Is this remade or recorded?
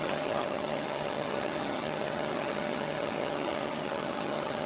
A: remade